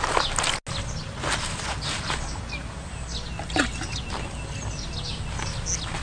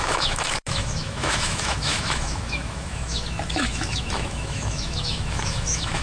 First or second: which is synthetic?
second